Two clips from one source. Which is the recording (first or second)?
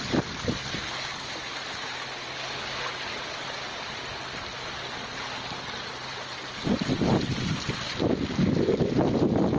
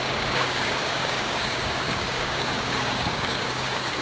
first